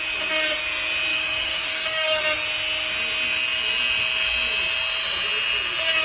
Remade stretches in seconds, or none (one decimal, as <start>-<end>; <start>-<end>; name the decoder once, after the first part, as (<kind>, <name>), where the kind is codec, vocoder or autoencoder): 1.1-2.2 (codec, DAC)